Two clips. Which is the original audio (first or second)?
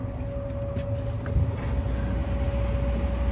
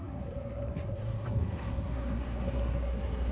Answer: first